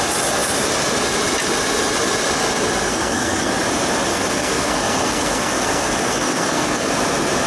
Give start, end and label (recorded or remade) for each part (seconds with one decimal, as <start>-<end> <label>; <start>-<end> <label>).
0.0-2.9 recorded; 2.9-3.5 remade; 3.5-4.1 recorded; 4.1-6.9 remade; 6.9-7.5 recorded